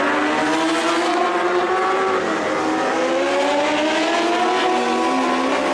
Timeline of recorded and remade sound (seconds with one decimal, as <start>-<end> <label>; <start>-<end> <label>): 0.0-1.1 recorded; 1.1-1.7 remade; 1.7-5.7 recorded